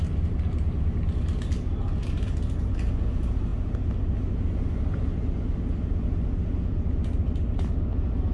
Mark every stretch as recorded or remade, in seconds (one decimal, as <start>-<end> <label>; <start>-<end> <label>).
0.0-8.3 recorded

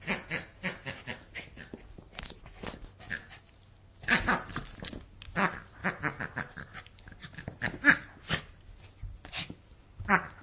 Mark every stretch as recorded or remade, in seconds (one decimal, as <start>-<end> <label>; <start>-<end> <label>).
0.0-10.4 recorded